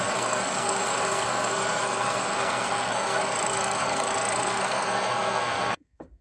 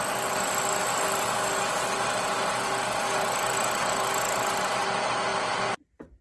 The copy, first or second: first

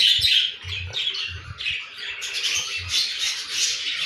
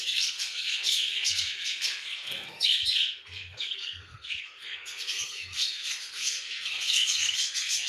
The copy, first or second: second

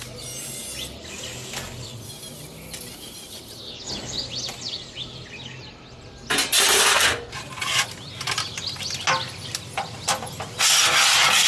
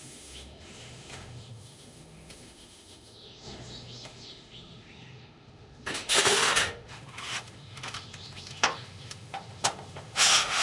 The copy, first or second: second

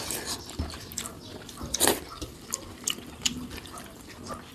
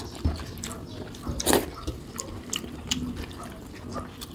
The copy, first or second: first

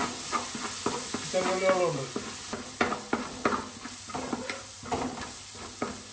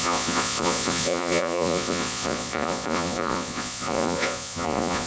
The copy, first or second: second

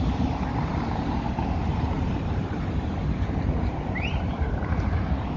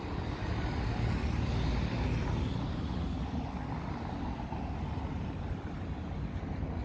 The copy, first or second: first